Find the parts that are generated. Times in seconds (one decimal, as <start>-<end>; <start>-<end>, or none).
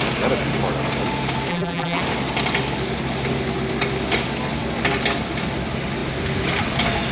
1.5-2.0